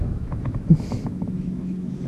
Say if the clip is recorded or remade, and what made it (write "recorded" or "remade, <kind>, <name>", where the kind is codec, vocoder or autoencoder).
remade, autoencoder, DAC-VAE